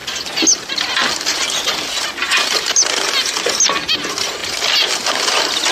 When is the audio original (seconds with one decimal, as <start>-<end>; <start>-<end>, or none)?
0.0-5.7